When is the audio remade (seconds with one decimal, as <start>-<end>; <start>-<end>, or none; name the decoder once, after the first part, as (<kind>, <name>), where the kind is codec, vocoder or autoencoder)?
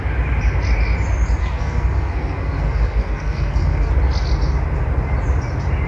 1.4-3.9 (codec, SNAC)